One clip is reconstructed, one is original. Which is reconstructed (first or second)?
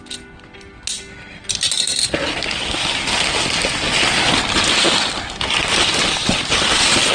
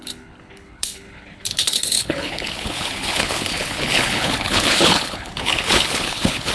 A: second